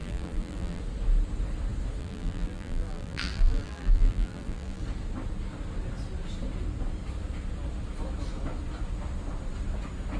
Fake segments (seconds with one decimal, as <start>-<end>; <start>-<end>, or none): 0.0-0.8; 2.0-4.8